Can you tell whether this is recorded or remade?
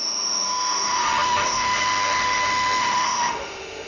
remade